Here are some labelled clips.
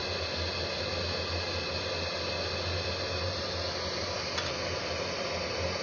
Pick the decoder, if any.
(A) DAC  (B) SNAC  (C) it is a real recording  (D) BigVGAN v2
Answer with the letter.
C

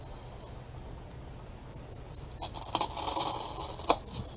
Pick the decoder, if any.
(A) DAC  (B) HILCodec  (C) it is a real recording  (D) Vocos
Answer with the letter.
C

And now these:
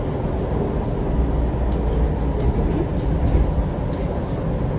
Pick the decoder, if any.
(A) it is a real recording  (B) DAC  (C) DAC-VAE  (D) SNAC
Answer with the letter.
A